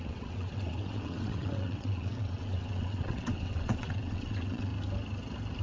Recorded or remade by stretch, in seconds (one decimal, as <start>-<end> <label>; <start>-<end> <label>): 0.0-4.7 remade; 4.7-5.6 recorded